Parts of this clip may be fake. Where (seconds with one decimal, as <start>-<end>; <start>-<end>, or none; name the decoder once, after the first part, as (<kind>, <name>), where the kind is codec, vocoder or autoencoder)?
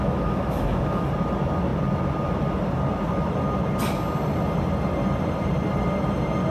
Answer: 0.0-1.1 (autoencoder, DAC-VAE)